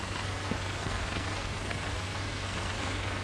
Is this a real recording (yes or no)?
no